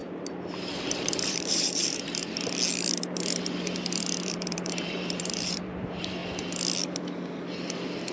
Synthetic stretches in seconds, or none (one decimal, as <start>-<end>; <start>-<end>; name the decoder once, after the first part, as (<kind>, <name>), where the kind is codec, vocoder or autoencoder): 0.9-2.2 (vocoder, BigVGAN v2); 4.3-6.2